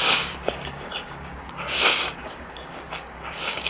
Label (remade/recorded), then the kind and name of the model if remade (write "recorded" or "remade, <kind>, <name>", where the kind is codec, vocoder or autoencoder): remade, codec, DAC